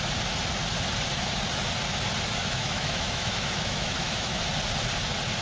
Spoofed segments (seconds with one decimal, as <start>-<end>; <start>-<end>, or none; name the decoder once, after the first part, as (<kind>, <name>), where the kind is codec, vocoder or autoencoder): 2.4-4.4 (autoencoder, DAC-VAE)